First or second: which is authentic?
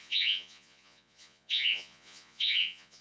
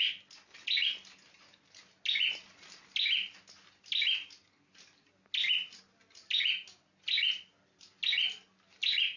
second